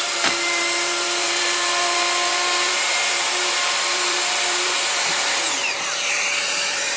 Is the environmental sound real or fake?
fake